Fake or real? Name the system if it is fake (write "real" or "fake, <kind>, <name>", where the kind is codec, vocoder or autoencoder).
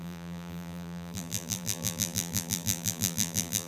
fake, vocoder, BigVGAN v2